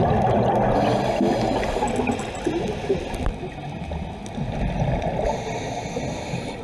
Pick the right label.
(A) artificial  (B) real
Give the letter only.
B